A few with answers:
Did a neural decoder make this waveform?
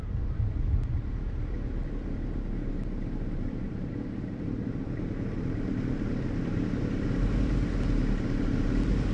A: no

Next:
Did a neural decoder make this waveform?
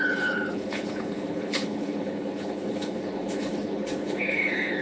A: yes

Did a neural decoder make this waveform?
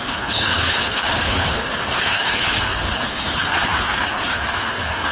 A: yes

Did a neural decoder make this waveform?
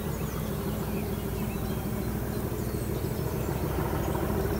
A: no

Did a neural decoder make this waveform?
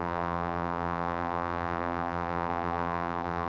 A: yes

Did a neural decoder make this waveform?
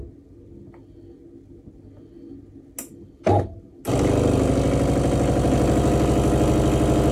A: no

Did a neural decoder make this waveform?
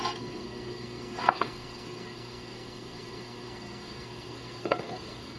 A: yes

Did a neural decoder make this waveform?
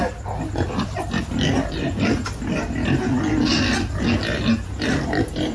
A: no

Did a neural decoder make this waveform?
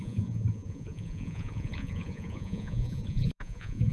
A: yes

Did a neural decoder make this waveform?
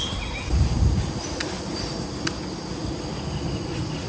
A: no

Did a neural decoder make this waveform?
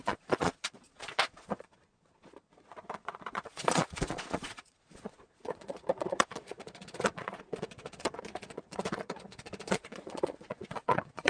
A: yes